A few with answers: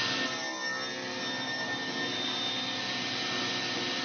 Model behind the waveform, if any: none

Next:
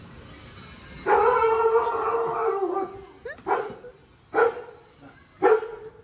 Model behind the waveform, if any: none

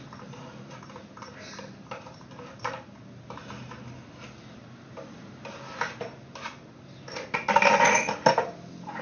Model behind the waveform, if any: none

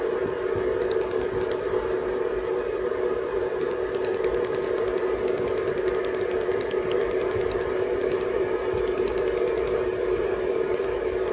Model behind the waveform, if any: none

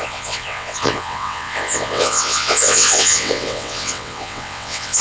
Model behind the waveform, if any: vocoder, WaveNeXt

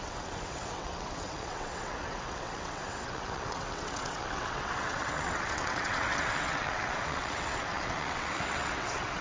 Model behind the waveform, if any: vocoder, WaveNeXt